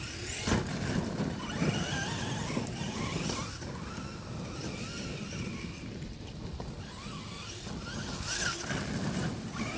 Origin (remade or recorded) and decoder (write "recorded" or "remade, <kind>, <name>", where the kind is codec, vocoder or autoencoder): recorded